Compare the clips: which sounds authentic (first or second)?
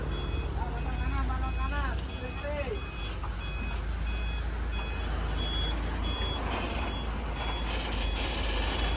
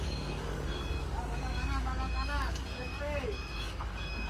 first